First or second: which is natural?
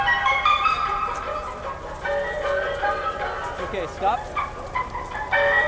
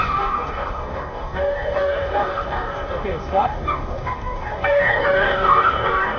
first